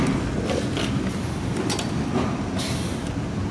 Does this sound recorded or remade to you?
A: recorded